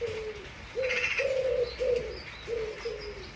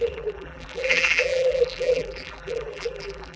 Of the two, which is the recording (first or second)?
first